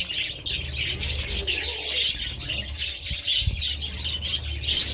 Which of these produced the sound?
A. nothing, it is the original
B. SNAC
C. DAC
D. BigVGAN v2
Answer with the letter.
A